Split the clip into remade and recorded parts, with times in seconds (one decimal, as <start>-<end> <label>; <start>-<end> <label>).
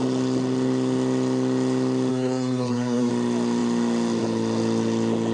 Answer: 0.0-2.1 recorded; 2.1-3.1 remade; 3.1-5.3 recorded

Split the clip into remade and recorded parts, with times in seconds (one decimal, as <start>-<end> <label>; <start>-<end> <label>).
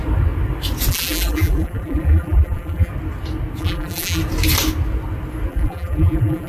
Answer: 0.0-0.9 recorded; 0.9-2.9 remade; 2.9-3.6 recorded; 3.6-4.2 remade; 4.2-5.5 recorded; 5.5-6.5 remade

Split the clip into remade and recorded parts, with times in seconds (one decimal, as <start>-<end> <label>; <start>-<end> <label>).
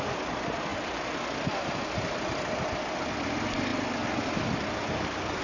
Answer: 0.0-5.4 recorded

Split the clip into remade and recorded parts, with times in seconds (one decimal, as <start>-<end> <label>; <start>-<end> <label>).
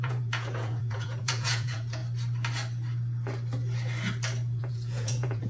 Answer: 0.0-2.0 remade; 2.0-4.6 recorded; 4.6-5.5 remade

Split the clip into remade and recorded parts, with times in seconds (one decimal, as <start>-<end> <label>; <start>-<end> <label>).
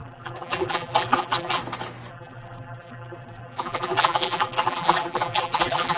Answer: 0.0-1.6 remade; 1.6-2.1 recorded; 2.1-6.0 remade